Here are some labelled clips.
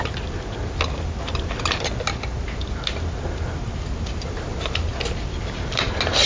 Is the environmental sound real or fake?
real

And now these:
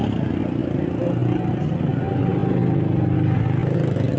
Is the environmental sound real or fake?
real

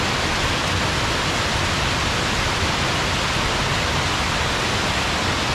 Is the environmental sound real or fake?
real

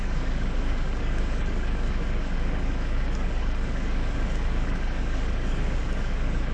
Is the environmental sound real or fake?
fake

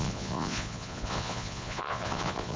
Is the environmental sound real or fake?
fake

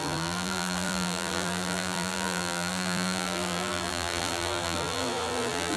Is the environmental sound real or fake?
fake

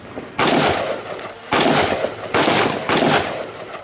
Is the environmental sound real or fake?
real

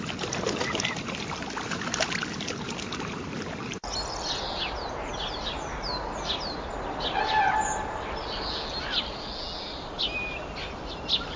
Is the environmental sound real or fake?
real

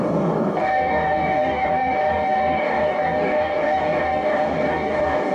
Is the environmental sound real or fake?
fake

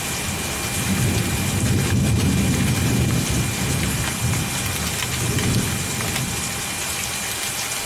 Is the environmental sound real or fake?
real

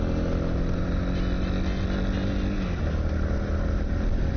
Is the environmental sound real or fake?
real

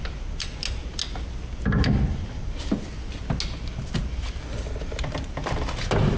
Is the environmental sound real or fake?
real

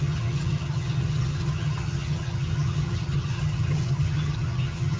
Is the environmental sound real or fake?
fake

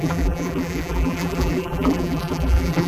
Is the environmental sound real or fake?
fake